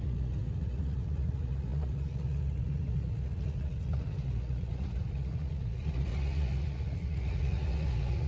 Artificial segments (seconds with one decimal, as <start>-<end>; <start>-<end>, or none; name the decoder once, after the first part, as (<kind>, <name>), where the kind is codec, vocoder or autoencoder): 0.0-8.3 (vocoder, Vocos)